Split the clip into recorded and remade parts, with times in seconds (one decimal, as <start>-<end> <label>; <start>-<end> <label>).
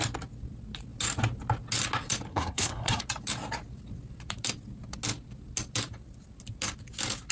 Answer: 0.0-2.3 recorded; 2.3-3.0 remade; 3.0-7.3 recorded